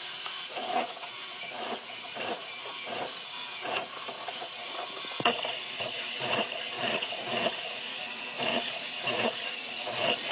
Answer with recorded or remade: remade